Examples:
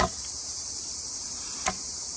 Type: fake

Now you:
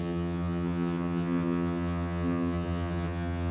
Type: fake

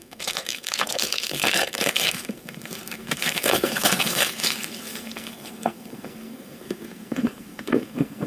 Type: fake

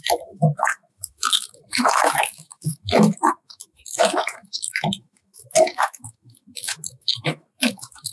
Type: fake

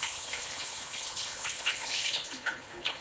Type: fake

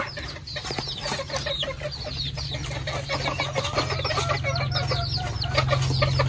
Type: real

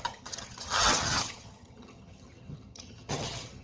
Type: fake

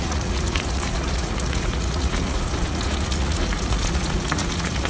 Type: fake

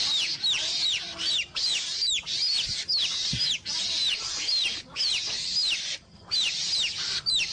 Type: fake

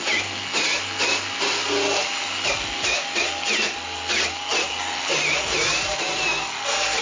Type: real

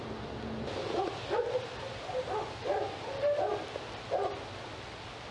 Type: real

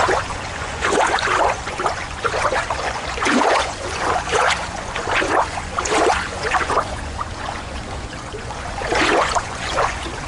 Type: fake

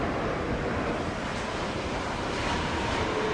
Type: real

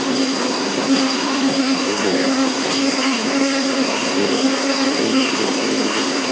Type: fake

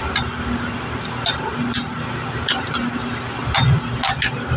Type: real